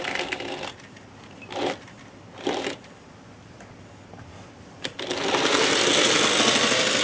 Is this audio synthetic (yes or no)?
no